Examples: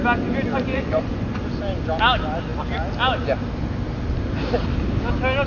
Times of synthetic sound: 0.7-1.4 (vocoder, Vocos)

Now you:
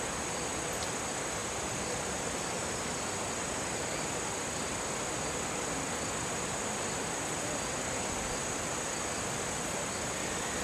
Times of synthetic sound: 1.4-3.3 (vocoder, BigVGAN v2)

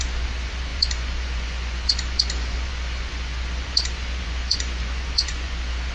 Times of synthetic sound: 0.0-5.9 (vocoder, Vocos)

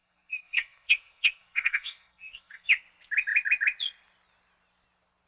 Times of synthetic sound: 0.0-2.7 (codec, SNAC)

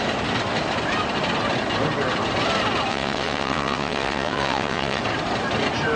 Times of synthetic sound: 2.9-5.0 (vocoder, WaveNeXt)

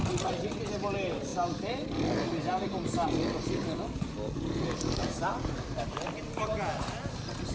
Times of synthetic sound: 0.0-0.5 (vocoder, BigVGAN v2)

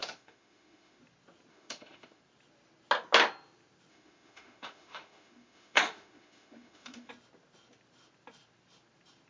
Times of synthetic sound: 0.0-1.0 (autoencoder, DAC-VAE); 1.5-2.2; 3.9-7.1